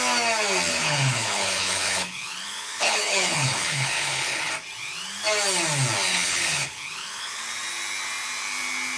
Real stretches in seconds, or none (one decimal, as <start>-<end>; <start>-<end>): 0.0-0.7; 4.5-6.1; 7.4-9.0